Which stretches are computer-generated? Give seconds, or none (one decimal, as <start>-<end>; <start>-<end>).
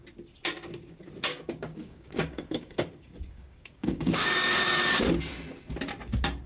1.3-5.0